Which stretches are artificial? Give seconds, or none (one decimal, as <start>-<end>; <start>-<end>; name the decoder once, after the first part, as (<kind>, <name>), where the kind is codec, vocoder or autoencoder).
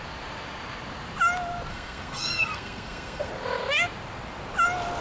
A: 1.7-3.3 (codec, SNAC)